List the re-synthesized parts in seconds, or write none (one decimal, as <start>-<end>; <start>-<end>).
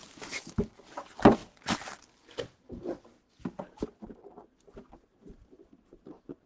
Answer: 0.0-0.7